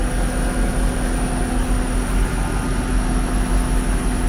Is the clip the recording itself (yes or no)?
yes